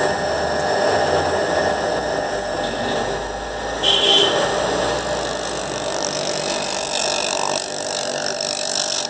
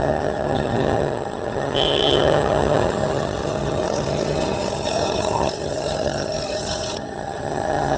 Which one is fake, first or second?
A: second